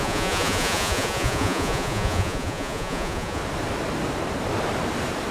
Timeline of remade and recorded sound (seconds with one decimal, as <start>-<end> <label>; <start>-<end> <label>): 0.0-3.4 remade; 3.4-5.3 recorded

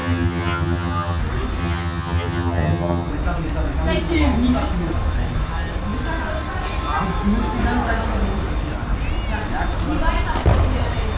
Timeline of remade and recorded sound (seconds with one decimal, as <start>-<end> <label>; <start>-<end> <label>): 0.0-1.2 remade; 1.2-1.6 recorded; 1.6-3.1 remade; 3.1-11.2 recorded

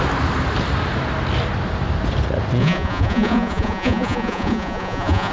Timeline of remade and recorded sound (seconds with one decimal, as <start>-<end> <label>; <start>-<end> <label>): 0.0-2.6 recorded; 2.6-5.3 remade

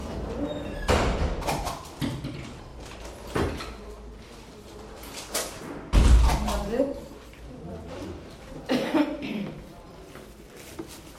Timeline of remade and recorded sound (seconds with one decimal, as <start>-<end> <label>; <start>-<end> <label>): 0.0-0.9 recorded; 0.9-2.7 remade; 2.7-6.8 recorded; 6.8-11.2 remade

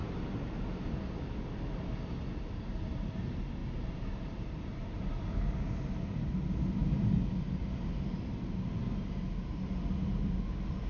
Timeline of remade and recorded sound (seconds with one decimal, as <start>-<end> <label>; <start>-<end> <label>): 0.0-0.5 remade; 0.5-3.6 recorded; 3.6-5.2 remade; 5.2-10.9 recorded

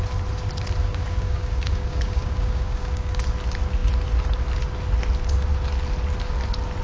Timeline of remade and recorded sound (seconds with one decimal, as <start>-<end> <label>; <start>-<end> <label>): 0.0-0.8 recorded; 0.8-3.2 remade; 3.2-6.8 recorded

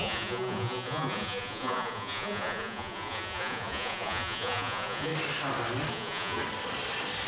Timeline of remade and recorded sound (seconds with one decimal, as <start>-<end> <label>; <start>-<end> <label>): 0.0-5.1 remade; 5.1-5.9 recorded; 5.9-6.4 remade; 6.4-7.3 recorded